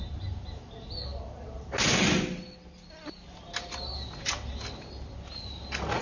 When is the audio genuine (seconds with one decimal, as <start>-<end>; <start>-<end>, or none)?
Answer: 0.0-1.1; 1.6-6.0